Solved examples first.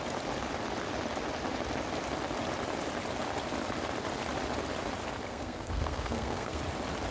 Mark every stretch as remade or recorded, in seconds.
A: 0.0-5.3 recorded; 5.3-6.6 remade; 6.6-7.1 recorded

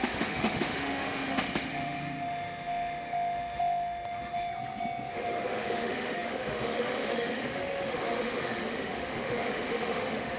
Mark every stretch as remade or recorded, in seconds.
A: 0.0-4.5 remade; 4.5-5.1 recorded; 5.1-10.4 remade

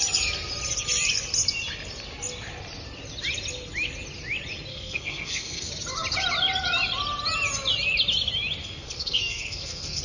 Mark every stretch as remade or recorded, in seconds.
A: 0.0-4.7 recorded; 4.7-5.7 remade; 5.7-8.6 recorded; 8.6-10.0 remade

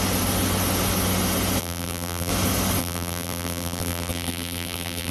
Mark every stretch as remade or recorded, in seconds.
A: 0.0-1.6 recorded; 1.6-2.3 remade; 2.3-2.8 recorded; 2.8-5.1 remade

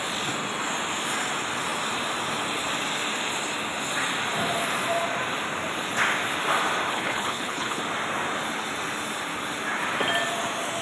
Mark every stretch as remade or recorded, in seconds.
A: 0.0-6.9 recorded; 6.9-7.8 remade; 7.8-10.8 recorded

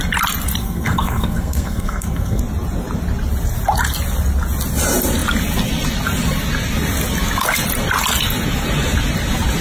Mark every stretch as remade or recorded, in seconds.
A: 0.0-0.6 recorded; 0.6-2.4 remade; 2.4-9.6 recorded

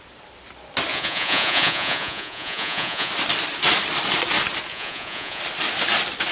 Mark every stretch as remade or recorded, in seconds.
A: 0.0-0.9 recorded; 0.9-3.1 remade; 3.1-4.7 recorded; 4.7-5.4 remade; 5.4-6.3 recorded